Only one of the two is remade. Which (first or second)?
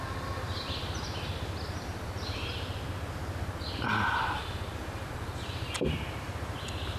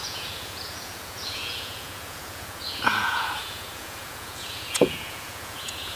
second